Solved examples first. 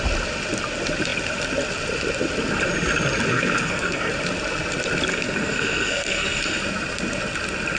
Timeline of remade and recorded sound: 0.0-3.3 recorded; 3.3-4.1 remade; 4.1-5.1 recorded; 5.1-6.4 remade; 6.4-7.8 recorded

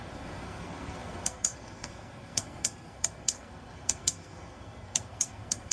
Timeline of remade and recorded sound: 0.0-5.7 remade

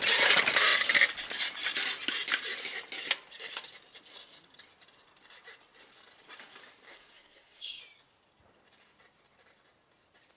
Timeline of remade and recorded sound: 0.0-6.9 recorded; 6.9-7.8 remade; 7.8-10.4 recorded

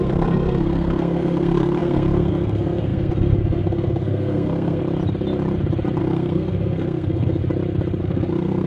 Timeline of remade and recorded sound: 0.0-4.8 remade; 4.8-6.0 recorded; 6.0-7.4 remade; 7.4-8.0 recorded; 8.0-8.7 remade